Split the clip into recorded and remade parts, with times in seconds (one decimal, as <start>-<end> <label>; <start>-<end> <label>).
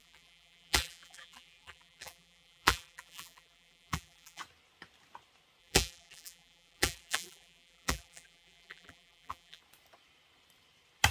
0.0-4.4 remade; 4.4-5.6 recorded; 5.6-9.6 remade; 9.6-11.1 recorded